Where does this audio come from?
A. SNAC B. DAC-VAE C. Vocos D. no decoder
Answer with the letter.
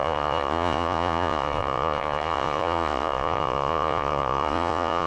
C